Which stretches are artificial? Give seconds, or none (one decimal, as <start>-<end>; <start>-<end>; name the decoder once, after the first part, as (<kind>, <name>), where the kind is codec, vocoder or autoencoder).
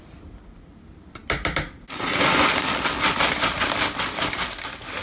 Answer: none